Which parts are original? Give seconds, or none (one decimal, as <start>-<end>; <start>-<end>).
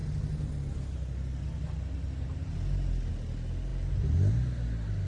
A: 0.0-5.1